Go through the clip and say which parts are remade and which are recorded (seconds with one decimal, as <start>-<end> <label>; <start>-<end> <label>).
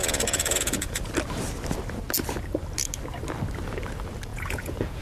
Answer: 0.0-1.1 remade; 1.1-4.3 recorded; 4.3-5.0 remade